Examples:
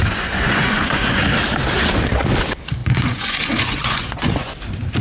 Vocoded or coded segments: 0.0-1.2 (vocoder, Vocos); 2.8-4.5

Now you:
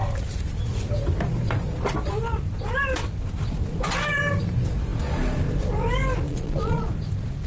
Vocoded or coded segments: 6.3-6.9 (vocoder, Vocos)

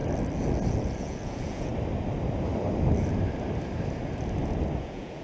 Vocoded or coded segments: 0.8-1.7 (vocoder, Vocos); 4.8-5.2